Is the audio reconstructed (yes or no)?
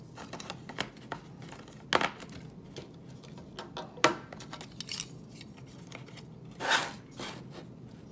no